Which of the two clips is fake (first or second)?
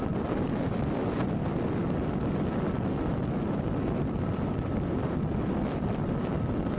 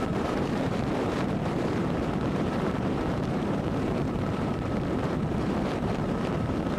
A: second